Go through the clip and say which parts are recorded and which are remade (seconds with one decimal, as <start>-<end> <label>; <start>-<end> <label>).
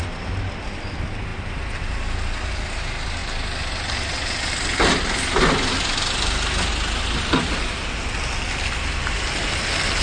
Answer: 0.0-10.0 recorded